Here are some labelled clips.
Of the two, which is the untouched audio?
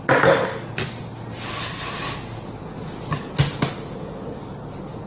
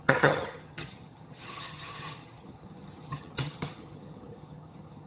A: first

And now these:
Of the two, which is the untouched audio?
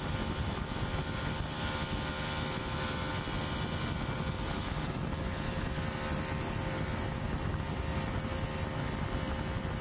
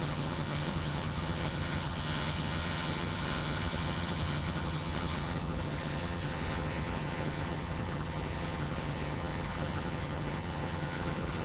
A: first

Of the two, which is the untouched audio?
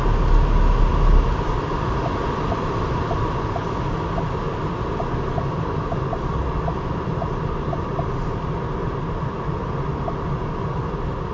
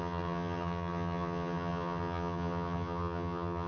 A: first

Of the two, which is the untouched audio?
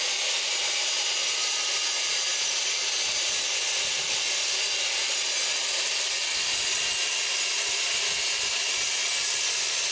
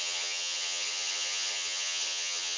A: first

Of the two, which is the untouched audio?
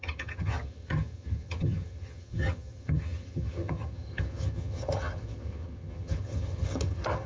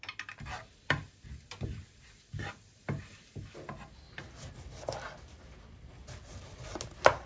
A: second